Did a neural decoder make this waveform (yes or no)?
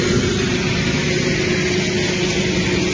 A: no